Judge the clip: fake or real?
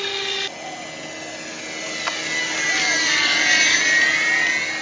real